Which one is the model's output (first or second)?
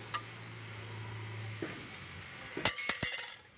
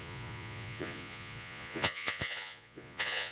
second